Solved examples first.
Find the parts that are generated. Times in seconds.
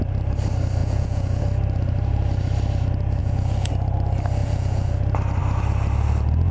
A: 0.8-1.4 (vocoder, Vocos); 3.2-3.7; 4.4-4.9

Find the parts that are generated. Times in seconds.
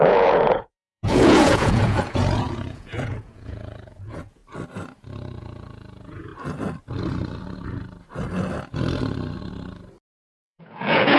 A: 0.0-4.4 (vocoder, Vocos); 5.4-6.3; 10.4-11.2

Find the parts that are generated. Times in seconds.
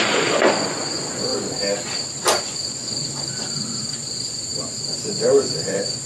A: 0.0-1.3 (vocoder, Vocos); 2.4-6.1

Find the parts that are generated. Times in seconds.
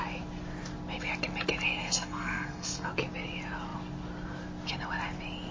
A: 1.8-2.9 (codec, SNAC)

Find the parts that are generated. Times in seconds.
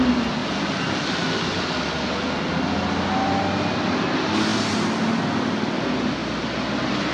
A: none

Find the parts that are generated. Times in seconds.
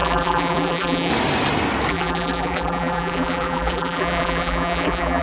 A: 0.0-1.1 (vocoder, BigVGAN v2); 1.9-5.2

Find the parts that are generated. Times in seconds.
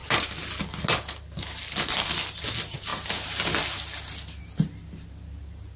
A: none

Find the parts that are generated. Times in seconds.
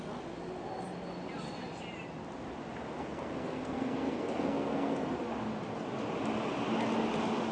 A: 3.0-5.1 (codec, SNAC)